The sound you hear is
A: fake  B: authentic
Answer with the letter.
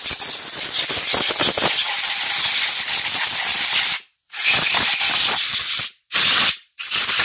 B